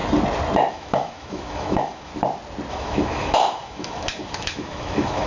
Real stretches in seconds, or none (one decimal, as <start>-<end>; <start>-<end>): 0.0-0.7; 2.1-2.7